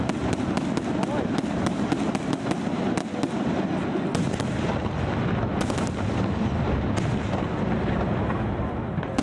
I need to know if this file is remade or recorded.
recorded